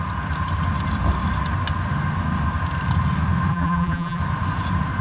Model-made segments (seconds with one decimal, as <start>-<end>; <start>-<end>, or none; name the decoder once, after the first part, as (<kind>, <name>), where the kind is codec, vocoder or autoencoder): 3.5-4.2 (vocoder, BigVGAN v2)

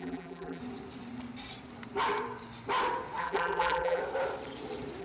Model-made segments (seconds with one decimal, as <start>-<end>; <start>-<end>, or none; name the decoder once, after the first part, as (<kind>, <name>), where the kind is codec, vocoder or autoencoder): 0.0-0.6 (vocoder, BigVGAN v2); 3.2-4.0

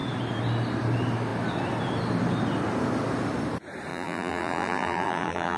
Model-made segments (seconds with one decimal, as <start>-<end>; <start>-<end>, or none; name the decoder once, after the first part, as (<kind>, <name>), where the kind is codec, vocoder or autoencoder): 3.9-5.6 (vocoder, BigVGAN v2)

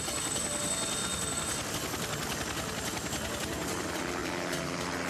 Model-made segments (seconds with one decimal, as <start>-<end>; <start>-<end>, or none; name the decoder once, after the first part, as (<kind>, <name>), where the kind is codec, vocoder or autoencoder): 1.0-1.7 (vocoder, BigVGAN v2)

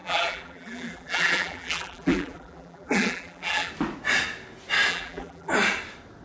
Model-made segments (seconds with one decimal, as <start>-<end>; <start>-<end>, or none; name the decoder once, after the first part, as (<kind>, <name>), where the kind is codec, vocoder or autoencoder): 0.0-3.7 (vocoder, BigVGAN v2); 4.9-5.5